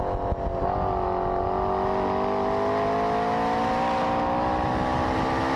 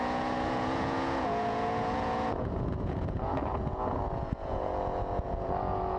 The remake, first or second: second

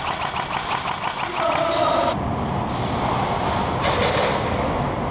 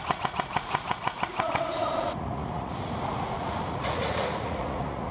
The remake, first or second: second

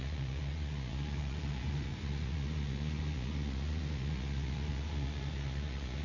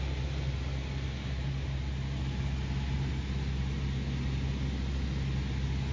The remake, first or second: first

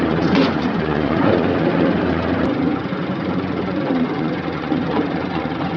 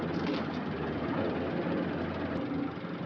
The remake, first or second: first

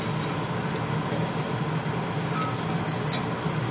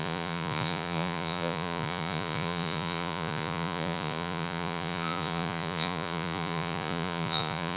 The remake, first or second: second